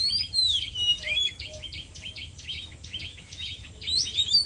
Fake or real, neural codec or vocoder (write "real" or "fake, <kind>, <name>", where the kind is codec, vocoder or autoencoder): fake, autoencoder, DAC-VAE